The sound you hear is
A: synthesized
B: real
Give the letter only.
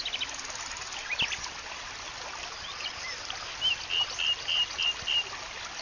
B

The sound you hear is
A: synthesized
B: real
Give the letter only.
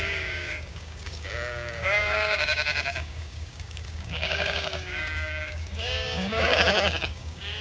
A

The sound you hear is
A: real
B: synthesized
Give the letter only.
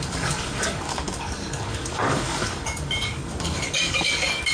B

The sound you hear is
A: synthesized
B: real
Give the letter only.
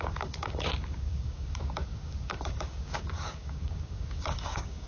A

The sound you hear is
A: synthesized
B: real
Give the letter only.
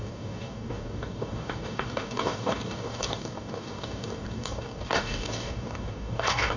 A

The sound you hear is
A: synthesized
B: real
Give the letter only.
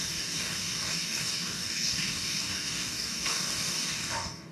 A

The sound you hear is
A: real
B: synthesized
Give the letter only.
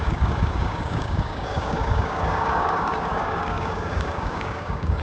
B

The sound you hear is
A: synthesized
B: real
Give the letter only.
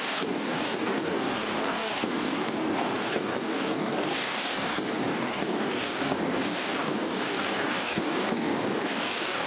A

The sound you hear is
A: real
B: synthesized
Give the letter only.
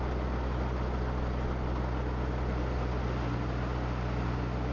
A